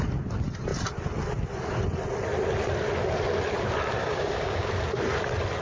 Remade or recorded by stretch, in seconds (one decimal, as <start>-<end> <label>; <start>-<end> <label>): 0.0-4.0 recorded; 4.0-4.7 remade; 4.7-5.6 recorded